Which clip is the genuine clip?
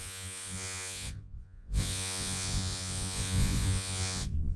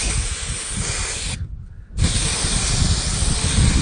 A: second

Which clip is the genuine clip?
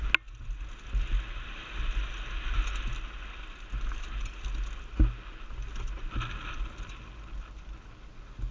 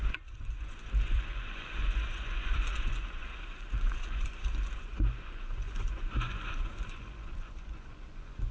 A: first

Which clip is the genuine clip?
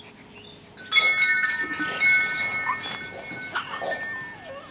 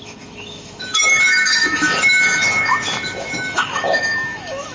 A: first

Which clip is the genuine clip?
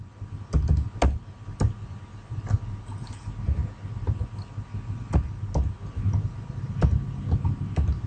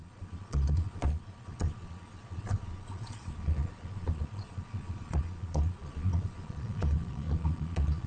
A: first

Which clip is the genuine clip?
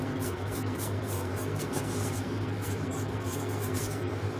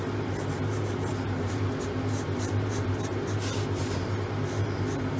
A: second